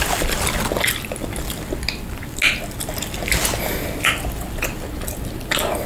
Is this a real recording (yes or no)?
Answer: yes